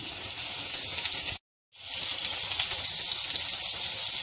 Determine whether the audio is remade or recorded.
recorded